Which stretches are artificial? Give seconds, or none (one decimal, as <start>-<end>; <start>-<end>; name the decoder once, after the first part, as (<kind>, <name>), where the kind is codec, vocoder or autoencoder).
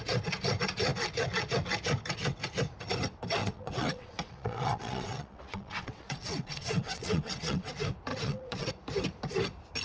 3.4-7.7 (vocoder, WaveNeXt); 8.1-8.7